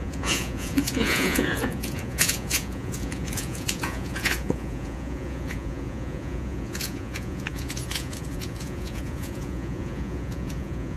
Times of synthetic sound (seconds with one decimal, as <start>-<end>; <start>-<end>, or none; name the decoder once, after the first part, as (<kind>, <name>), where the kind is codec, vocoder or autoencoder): 0.0-11.0 (vocoder, Vocos)